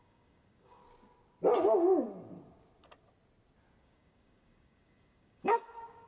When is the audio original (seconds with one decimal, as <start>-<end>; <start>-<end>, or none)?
0.8-3.8